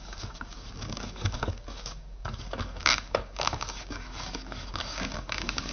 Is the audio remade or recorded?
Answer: remade